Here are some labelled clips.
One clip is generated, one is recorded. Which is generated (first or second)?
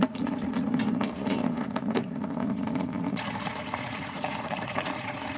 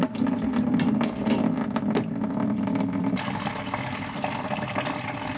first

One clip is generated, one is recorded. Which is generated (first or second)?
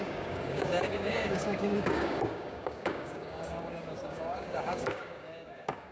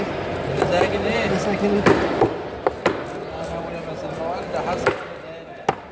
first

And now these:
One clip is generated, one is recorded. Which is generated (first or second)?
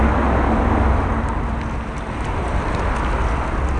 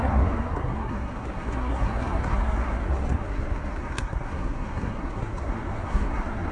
second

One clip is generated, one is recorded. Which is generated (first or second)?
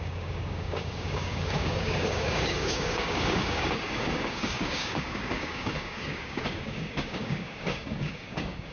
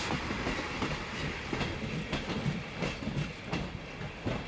first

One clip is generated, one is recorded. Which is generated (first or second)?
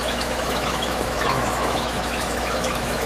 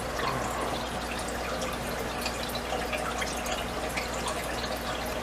first